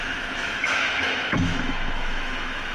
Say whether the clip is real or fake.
fake